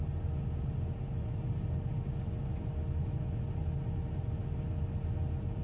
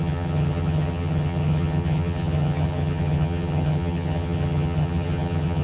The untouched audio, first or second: first